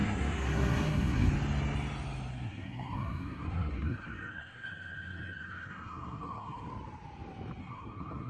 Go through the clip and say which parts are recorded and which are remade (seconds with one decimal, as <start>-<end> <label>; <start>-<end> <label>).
0.0-1.3 remade; 1.3-2.3 recorded; 2.3-6.7 remade; 6.7-7.6 recorded; 7.6-8.3 remade